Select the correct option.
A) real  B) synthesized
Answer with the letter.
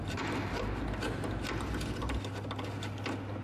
A